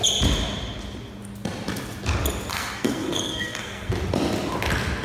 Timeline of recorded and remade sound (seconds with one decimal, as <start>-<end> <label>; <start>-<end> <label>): 0.0-2.5 recorded; 2.5-3.9 remade; 3.9-5.0 recorded